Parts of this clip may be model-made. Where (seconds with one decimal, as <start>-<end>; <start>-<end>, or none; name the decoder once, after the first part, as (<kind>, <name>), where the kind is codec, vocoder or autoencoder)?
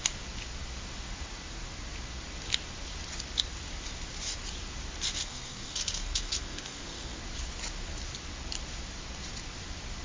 5.2-7.2 (codec, SNAC)